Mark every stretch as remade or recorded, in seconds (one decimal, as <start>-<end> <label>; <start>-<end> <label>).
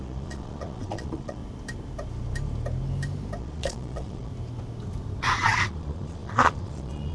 0.0-1.4 remade; 1.4-3.4 recorded; 3.4-4.3 remade; 4.3-5.2 recorded; 5.2-7.1 remade